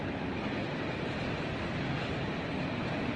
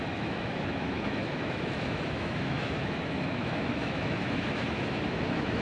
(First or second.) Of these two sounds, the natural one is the first